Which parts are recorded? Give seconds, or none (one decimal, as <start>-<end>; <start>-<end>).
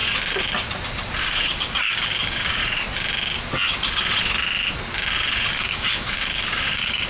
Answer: 0.0-1.2; 2.6-5.7